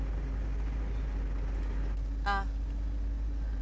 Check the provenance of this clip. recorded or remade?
recorded